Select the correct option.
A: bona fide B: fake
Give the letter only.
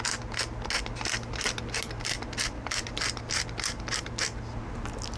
A